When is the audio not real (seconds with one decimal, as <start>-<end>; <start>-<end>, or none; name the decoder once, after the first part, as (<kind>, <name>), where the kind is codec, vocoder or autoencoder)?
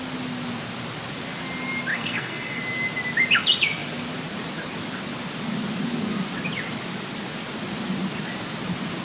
1.9-2.6 (codec, SNAC)